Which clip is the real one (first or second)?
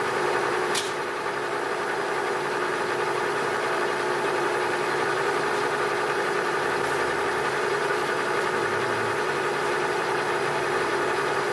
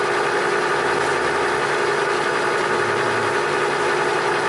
second